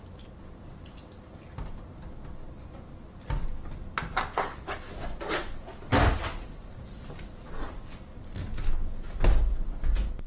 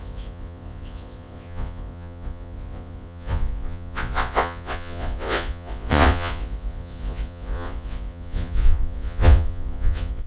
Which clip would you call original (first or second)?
first